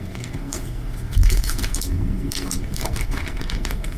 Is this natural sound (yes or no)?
no